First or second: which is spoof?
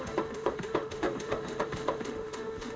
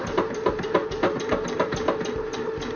first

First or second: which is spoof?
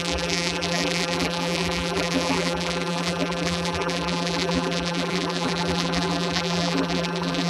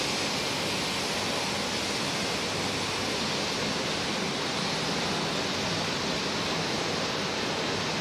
first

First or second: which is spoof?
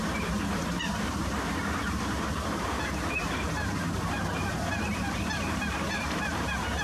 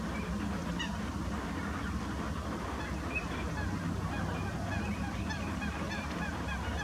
first